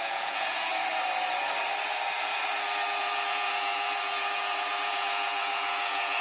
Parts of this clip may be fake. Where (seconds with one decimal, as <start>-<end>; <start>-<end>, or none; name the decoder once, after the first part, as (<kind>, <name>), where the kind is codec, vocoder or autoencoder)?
0.0-0.7 (vocoder, Vocos); 3.0-6.2